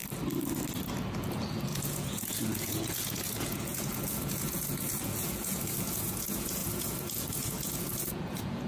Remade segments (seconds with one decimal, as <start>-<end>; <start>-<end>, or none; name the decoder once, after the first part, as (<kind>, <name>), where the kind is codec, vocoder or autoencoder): 1.2-8.7 (vocoder, Vocos)